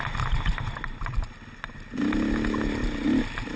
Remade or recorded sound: recorded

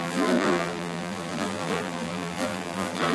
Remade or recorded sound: remade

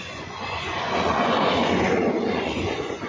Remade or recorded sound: remade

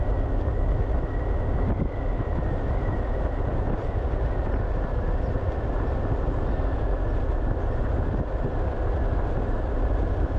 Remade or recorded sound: recorded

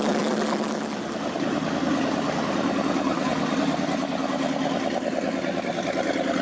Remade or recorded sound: recorded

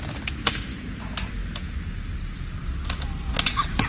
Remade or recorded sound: recorded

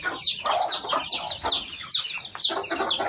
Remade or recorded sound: recorded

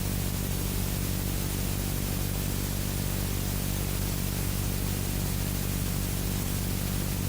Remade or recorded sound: recorded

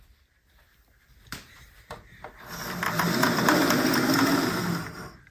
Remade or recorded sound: recorded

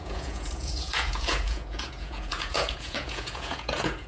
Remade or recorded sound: remade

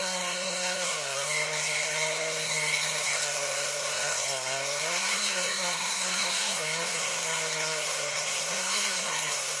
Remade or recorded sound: remade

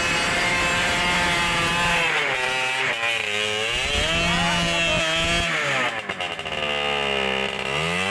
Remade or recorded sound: recorded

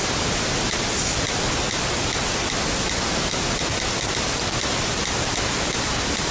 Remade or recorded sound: recorded